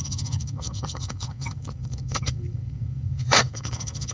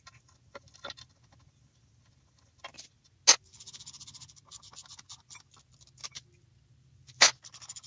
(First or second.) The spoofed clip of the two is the first